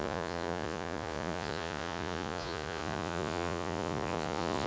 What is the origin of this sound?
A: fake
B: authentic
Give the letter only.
A